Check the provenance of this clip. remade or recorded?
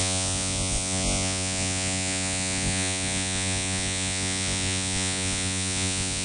remade